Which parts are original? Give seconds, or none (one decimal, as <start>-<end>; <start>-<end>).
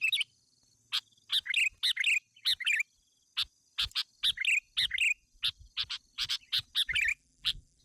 0.0-7.1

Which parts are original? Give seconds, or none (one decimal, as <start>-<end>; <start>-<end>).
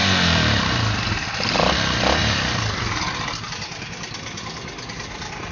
0.6-2.2; 4.4-5.5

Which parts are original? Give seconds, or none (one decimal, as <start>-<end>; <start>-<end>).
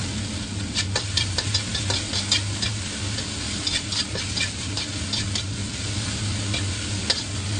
0.0-5.6; 6.2-7.6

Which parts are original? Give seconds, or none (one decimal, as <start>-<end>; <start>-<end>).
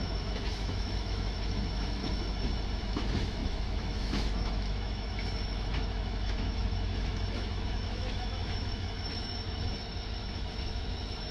2.0-2.8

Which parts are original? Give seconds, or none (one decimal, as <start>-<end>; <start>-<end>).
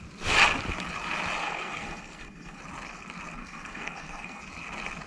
0.0-1.4; 2.6-3.4; 4.4-5.1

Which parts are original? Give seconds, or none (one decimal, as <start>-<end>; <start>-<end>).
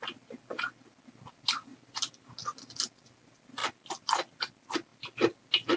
0.0-1.7; 2.6-3.6; 4.3-5.8